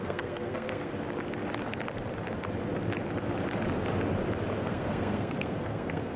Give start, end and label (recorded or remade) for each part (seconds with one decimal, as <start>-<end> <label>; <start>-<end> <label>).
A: 0.0-0.9 remade; 0.9-4.6 recorded; 4.6-6.2 remade